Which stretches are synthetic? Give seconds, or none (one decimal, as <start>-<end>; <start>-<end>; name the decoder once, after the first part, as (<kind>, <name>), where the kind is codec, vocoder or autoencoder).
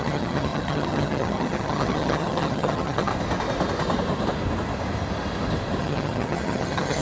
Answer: 0.0-3.1 (vocoder, HiFi-GAN); 5.8-7.0